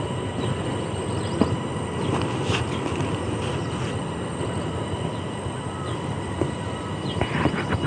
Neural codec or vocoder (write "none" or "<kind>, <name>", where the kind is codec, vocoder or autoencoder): none